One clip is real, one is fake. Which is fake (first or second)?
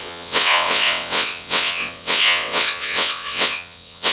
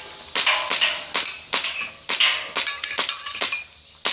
first